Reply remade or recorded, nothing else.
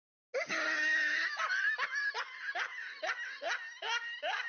recorded